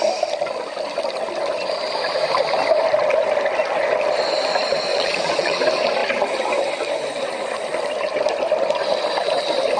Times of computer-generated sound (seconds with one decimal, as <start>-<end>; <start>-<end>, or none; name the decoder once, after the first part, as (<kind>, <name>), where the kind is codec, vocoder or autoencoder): 4.9-5.6 (vocoder, Vocos)